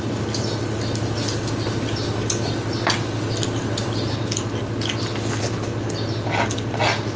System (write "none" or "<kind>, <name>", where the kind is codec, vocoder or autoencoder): none